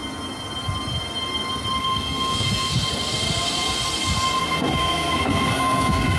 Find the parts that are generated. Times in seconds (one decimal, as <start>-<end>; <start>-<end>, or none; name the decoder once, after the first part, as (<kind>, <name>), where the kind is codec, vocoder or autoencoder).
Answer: 1.8-2.7 (codec, SNAC); 4.4-6.2